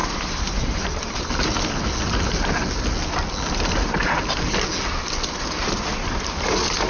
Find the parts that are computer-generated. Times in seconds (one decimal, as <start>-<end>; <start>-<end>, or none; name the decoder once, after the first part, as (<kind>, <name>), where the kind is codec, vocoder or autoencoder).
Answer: 0.0-1.5 (vocoder, BigVGAN v2)